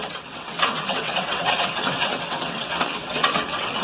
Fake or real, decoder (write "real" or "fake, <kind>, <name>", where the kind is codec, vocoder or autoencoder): fake, vocoder, WaveNeXt